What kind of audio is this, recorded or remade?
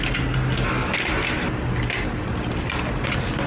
recorded